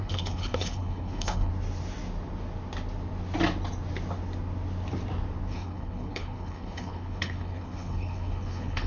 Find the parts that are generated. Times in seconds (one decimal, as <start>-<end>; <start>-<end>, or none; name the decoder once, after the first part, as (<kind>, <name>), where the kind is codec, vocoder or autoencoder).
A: 0.0-1.5 (codec, HILCodec); 5.5-8.9